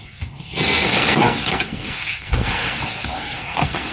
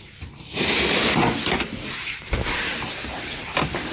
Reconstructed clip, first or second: first